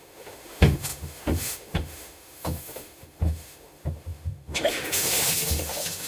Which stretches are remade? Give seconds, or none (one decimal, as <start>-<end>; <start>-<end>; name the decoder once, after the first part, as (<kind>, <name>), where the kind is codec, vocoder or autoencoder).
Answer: 0.0-6.1 (autoencoder, DAC-VAE)